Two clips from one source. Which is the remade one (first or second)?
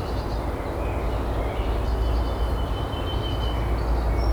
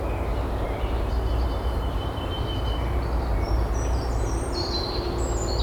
second